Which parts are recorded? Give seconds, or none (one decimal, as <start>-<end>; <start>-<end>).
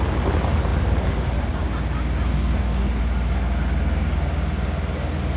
0.0-2.3; 3.0-5.4